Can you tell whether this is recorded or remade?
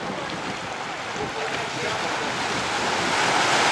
recorded